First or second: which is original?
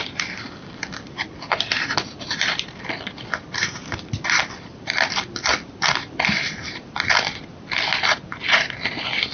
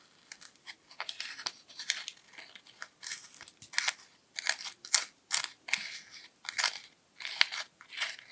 second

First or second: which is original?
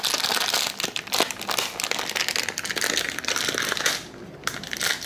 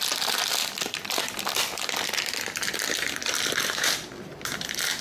first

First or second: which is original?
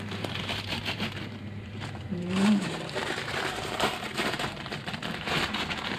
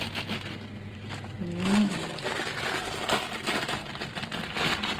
second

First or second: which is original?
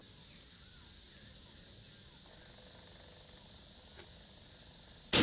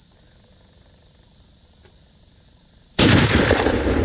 first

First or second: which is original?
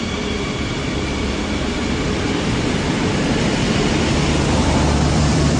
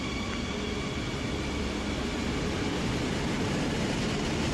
second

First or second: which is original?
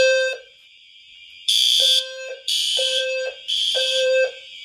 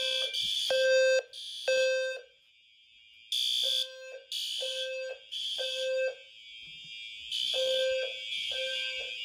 second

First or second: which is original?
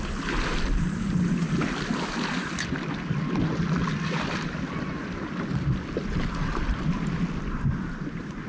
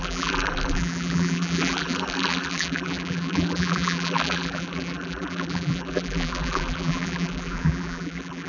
first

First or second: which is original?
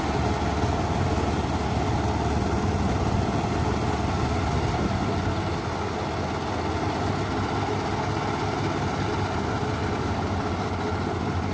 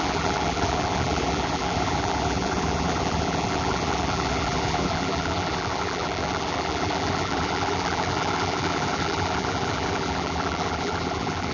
first